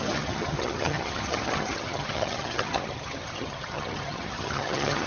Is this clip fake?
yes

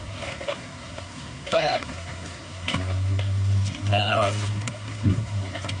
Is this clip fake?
yes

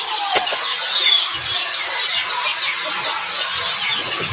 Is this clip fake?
no